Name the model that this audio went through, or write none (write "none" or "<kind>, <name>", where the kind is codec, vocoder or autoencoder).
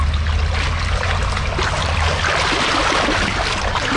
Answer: none